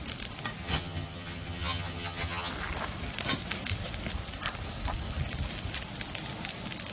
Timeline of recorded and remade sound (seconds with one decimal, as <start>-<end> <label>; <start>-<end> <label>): 0.0-0.6 recorded; 0.6-2.5 remade; 2.5-6.9 recorded